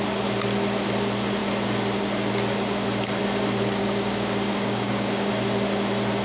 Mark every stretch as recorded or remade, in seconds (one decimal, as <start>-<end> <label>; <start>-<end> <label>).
0.0-3.8 recorded; 3.8-5.3 remade; 5.3-6.2 recorded